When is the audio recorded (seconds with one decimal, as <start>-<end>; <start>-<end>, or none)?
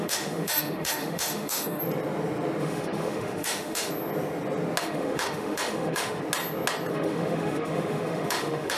1.8-2.6; 3.9-4.8; 6.2-6.9